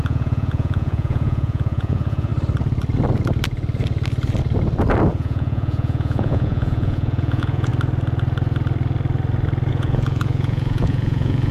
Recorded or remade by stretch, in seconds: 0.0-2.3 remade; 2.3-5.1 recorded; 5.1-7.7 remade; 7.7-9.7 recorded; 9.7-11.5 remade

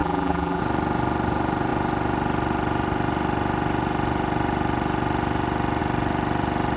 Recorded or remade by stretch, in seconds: 0.0-0.6 remade; 0.6-6.8 recorded

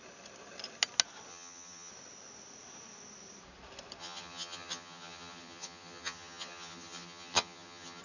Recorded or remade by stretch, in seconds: 0.0-1.3 recorded; 1.3-1.9 remade; 1.9-4.0 recorded; 4.0-8.0 remade

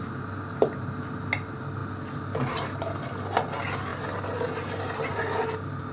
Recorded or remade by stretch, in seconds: 0.0-5.9 recorded